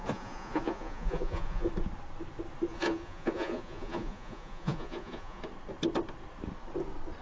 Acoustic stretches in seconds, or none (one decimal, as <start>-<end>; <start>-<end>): 1.7-2.7; 5.4-7.2